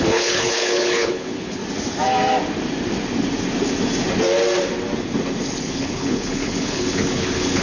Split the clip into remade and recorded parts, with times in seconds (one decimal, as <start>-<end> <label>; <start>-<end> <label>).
0.0-1.6 remade; 1.6-5.6 recorded; 5.6-7.6 remade

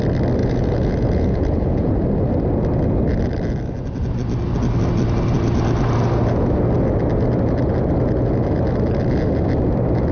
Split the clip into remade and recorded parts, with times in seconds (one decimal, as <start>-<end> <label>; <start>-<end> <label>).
0.0-0.4 recorded; 0.4-1.9 remade; 1.9-10.1 recorded

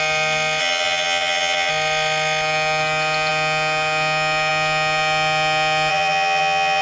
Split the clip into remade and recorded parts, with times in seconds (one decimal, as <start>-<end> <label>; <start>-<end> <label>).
0.0-0.6 recorded; 0.6-1.7 remade; 1.7-5.9 recorded; 5.9-6.8 remade

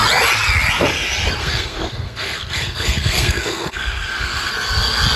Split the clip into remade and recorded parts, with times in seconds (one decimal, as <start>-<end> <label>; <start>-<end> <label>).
0.0-1.4 recorded; 1.4-4.5 remade; 4.5-5.2 recorded

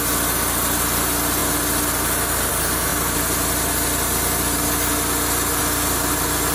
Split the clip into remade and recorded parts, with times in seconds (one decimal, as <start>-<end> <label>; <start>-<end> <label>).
0.0-6.5 recorded

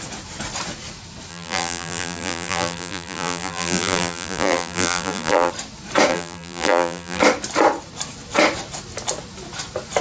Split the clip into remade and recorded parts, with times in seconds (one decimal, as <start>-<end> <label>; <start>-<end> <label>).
0.0-1.3 recorded; 1.3-5.5 remade; 5.5-6.1 recorded; 6.1-7.2 remade; 7.2-10.0 recorded